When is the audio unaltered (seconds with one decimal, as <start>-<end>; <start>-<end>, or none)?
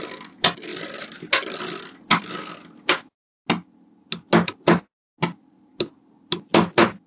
0.0-7.1